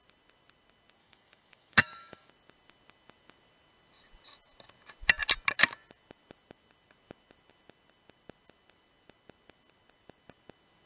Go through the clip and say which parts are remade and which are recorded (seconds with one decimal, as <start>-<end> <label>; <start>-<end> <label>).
0.0-1.0 recorded; 1.0-2.3 remade; 2.3-10.9 recorded